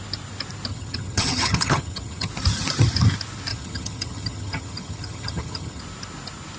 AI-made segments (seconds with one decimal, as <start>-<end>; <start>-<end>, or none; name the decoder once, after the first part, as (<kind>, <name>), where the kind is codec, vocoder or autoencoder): 0.7-2.3 (vocoder, HiFi-GAN); 3.5-5.8